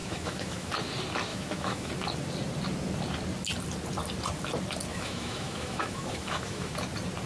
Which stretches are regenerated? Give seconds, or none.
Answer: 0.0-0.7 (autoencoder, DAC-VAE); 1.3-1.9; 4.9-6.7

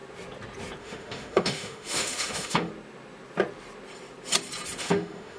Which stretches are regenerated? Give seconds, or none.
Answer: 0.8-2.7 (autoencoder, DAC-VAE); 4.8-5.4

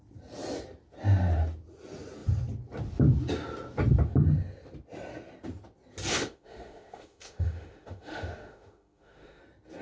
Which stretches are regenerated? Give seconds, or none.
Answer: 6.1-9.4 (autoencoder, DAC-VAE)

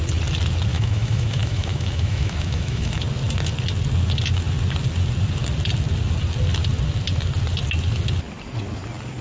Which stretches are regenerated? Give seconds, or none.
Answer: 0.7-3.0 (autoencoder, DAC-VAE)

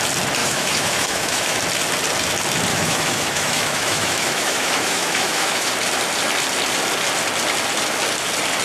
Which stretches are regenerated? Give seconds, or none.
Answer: 0.4-1.6 (autoencoder, DAC-VAE); 2.7-5.7

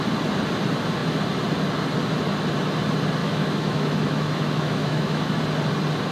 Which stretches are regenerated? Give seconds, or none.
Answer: 3.2-5.4 (autoencoder, DAC-VAE)

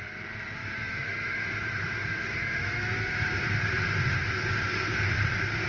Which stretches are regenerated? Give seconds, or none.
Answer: 0.6-3.4 (autoencoder, DAC-VAE)